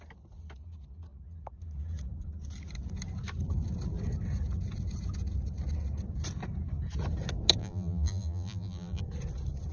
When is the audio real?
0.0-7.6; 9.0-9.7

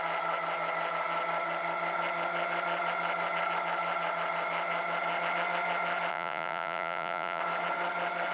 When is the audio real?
0.0-6.1; 7.4-8.3

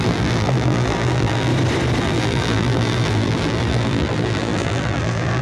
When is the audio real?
1.5-2.0

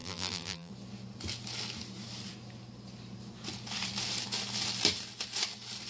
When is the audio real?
0.7-5.9

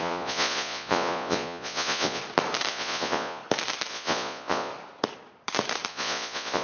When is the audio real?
2.2-2.7; 3.4-3.9; 4.7-5.9

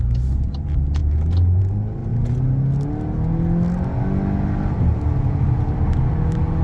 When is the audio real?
0.0-6.6